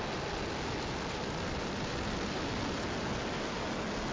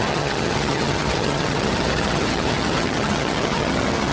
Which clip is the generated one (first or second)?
second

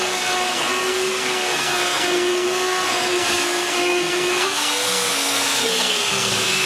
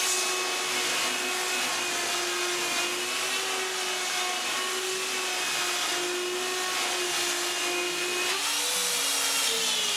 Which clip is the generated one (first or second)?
first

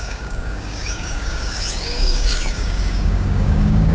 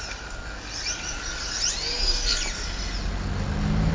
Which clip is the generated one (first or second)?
first